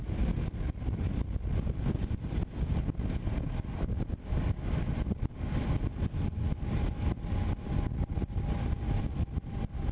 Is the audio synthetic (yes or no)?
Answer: no